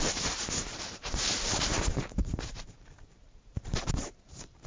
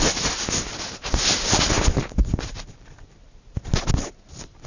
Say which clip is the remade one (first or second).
first